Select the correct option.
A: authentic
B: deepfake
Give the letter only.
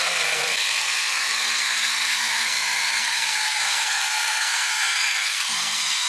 B